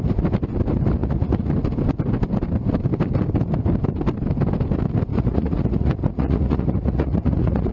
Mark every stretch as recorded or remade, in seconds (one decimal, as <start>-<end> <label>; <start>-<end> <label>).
0.0-1.0 recorded; 1.0-1.5 remade; 1.5-5.1 recorded; 5.1-7.7 remade